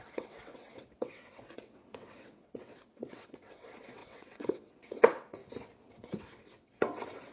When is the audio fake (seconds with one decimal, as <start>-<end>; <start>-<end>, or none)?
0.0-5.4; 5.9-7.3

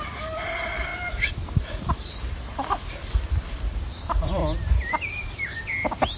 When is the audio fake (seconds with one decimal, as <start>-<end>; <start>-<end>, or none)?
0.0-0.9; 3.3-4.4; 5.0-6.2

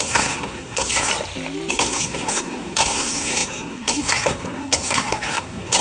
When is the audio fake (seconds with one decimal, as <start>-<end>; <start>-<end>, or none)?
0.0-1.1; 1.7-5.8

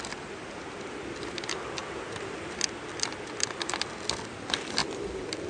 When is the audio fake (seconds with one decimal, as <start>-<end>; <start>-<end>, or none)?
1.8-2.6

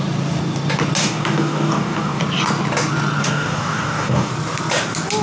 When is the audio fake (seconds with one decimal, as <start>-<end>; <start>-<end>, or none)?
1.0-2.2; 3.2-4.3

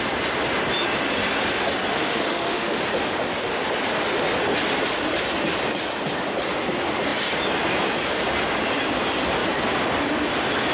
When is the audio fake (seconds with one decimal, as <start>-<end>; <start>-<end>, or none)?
1.9-2.8

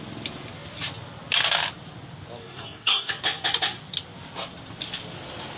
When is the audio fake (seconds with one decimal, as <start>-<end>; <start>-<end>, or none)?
2.4-3.1